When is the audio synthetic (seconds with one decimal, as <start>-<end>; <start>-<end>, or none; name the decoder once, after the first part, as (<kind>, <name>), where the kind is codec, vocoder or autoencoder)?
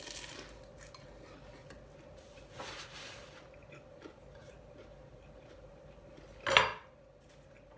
none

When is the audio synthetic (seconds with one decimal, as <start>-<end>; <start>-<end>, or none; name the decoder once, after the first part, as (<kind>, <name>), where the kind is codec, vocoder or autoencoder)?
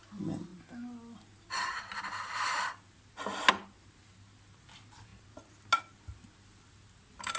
none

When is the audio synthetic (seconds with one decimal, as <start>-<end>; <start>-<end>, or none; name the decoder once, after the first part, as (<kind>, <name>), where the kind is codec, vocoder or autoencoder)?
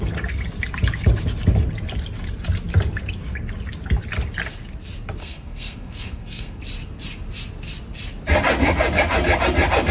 5.2-6.6 (codec, SNAC)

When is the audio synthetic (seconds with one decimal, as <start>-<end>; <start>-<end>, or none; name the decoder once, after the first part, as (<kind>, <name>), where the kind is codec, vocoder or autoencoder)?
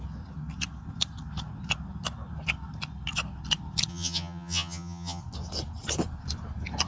3.9-5.2 (vocoder, HiFi-GAN)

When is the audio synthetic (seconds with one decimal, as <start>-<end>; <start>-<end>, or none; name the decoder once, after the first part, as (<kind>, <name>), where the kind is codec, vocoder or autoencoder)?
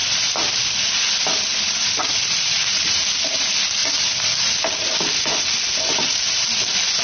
none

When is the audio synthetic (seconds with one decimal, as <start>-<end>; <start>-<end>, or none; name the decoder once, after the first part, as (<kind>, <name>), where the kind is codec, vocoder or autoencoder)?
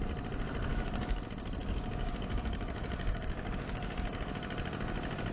0.7-1.2 (codec, DAC); 1.6-4.3